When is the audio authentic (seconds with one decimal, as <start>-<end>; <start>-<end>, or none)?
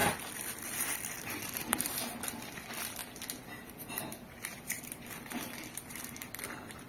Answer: 0.0-1.2; 3.0-3.7